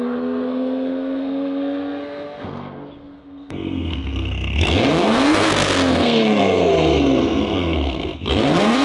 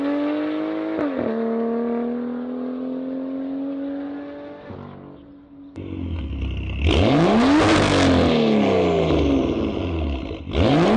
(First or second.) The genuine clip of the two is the second